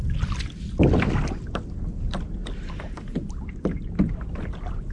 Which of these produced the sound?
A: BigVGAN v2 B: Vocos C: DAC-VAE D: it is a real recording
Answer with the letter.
D